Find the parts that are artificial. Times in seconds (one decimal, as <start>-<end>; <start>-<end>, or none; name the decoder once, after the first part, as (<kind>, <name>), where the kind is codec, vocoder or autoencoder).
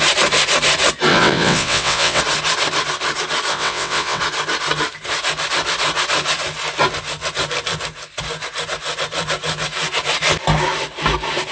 1.1-2.2 (vocoder, WaveNeXt); 3.5-4.2